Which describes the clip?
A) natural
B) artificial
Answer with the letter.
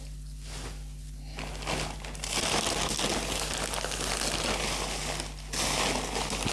A